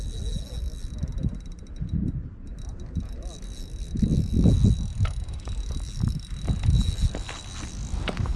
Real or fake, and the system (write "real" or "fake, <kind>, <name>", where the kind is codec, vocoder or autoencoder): real